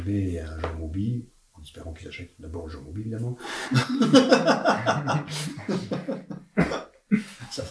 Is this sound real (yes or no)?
yes